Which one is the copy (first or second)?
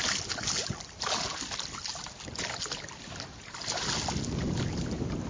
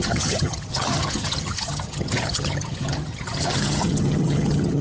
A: second